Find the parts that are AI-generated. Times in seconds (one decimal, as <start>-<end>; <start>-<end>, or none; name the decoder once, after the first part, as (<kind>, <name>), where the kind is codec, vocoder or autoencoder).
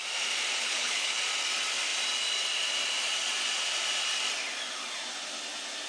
0.6-1.2 (codec, HILCodec)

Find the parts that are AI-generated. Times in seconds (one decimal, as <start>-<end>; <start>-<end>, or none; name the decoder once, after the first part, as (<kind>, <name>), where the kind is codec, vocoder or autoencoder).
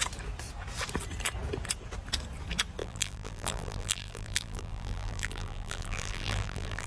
2.8-6.9 (vocoder, BigVGAN v2)